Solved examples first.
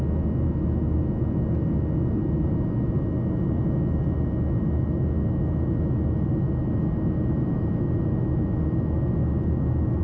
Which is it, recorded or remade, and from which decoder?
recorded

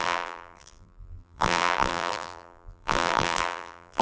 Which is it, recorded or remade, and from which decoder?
remade, vocoder, BigVGAN v2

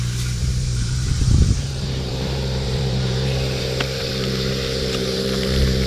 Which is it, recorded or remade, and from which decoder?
remade, vocoder, BigVGAN v2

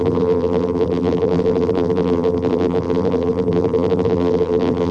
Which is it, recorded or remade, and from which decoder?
remade, vocoder, BigVGAN v2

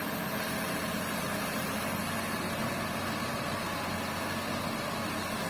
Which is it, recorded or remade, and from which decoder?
recorded